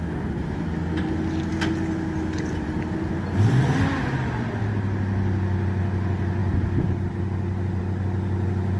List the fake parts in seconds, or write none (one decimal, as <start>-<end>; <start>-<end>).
none